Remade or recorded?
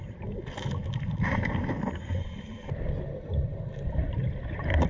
remade